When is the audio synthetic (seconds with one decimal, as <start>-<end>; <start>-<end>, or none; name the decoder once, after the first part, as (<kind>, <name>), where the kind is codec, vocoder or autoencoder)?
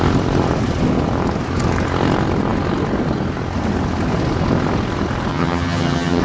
5.3-6.2 (vocoder, HiFi-GAN)